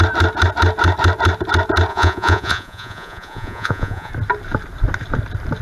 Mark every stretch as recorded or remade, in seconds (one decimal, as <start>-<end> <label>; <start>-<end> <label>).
0.0-1.9 recorded; 1.9-4.1 remade; 4.1-5.6 recorded